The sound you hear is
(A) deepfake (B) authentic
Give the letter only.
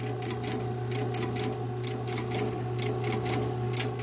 B